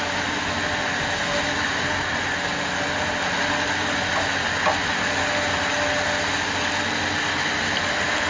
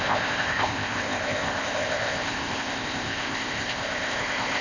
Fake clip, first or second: second